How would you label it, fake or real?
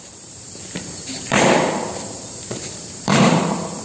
fake